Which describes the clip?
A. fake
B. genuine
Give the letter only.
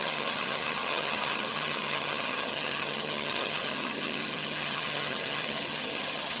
A